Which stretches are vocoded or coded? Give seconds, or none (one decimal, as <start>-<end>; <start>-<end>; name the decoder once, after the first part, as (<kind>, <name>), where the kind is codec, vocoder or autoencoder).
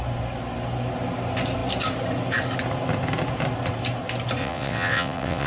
4.4-5.5 (vocoder, WaveNeXt)